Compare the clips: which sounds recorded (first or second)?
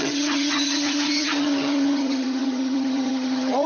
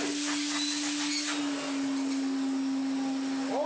second